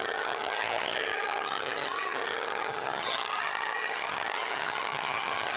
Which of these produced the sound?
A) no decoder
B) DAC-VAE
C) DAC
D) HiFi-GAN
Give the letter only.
D